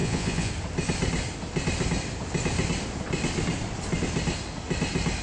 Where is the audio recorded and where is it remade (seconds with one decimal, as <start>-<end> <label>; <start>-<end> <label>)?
0.0-0.5 remade; 0.5-5.2 recorded